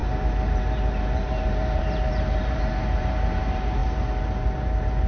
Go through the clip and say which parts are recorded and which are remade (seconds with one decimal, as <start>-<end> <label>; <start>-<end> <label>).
0.0-5.1 remade